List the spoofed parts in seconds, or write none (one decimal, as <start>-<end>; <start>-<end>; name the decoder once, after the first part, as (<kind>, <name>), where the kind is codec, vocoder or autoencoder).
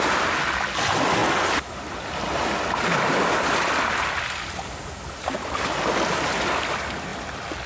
none